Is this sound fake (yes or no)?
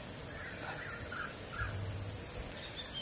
no